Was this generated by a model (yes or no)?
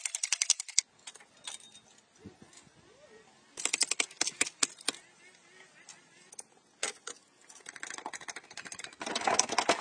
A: no